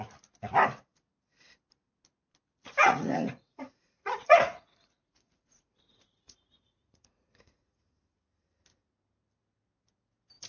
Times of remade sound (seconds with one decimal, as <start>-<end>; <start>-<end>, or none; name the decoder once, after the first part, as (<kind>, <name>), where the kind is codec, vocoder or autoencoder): 2.8-7.9 (vocoder, Vocos)